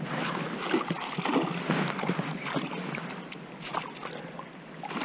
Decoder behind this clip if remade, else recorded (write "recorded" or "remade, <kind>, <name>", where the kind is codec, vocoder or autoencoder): recorded